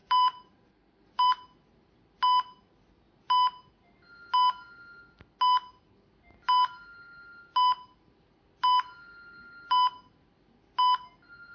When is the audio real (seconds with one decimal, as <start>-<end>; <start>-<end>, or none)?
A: 1.3-11.5